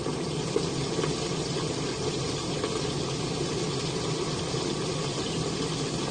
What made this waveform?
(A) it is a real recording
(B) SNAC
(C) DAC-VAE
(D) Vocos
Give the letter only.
A